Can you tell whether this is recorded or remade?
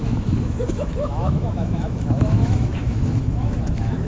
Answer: remade